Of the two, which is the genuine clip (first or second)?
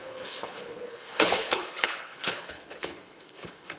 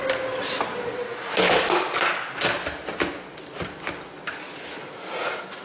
second